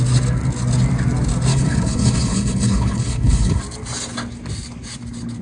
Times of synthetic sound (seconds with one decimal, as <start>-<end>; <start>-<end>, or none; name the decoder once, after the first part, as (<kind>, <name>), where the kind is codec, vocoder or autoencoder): 1.5-3.6 (codec, HILCodec)